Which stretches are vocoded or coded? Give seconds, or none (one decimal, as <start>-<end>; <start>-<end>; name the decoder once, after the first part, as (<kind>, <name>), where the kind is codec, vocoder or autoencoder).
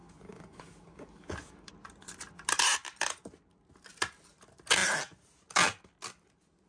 0.0-1.7 (codec, DAC)